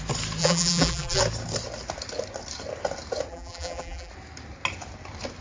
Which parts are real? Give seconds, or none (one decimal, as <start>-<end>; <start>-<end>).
0.0-0.4; 1.2-3.3; 4.1-5.4